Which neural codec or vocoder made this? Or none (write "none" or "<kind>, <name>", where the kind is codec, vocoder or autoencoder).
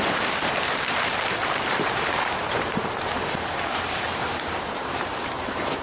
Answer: vocoder, BigVGAN v2